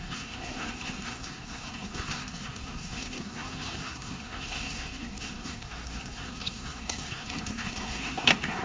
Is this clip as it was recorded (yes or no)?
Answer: no